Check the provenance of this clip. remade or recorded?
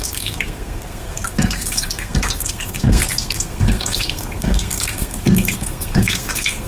remade